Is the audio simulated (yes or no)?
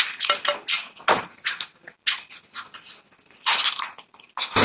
no